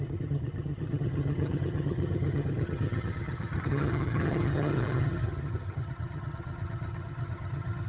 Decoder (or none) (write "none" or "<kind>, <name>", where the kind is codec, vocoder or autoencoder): vocoder, HiFi-GAN